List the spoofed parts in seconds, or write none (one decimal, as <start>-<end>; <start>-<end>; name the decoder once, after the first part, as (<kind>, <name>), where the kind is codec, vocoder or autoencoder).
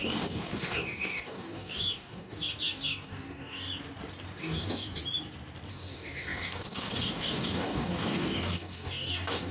0.0-3.7 (codec, DAC); 4.4-5.0; 5.7-9.5